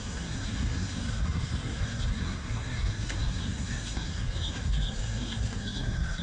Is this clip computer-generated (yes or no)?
yes